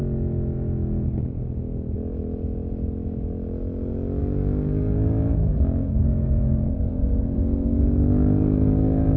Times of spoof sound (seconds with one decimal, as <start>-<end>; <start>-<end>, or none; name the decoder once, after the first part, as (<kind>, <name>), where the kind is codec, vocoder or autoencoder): 4.2-9.2 (codec, DAC)